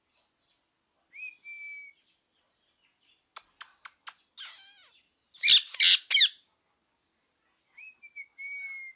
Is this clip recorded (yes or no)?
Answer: yes